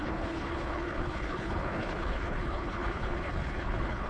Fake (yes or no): yes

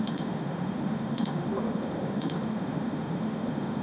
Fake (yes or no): yes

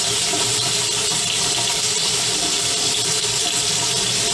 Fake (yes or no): yes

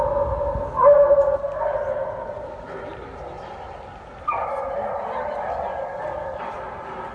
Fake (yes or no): no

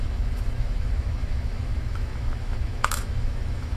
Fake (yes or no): yes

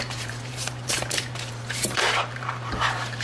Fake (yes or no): yes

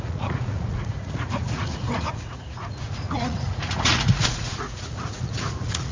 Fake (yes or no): yes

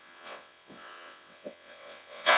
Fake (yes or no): yes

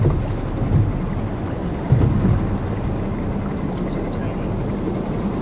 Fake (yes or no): no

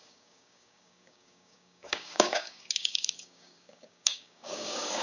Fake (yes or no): yes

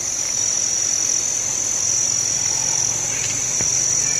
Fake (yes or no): no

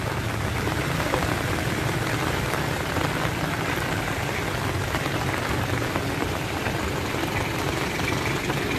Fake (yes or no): yes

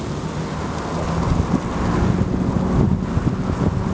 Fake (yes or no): no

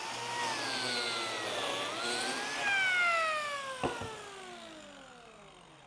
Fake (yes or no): no